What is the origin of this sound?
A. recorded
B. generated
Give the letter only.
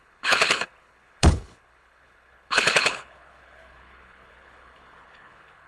B